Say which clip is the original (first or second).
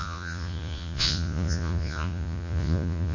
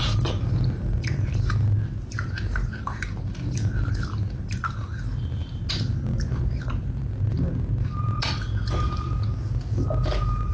second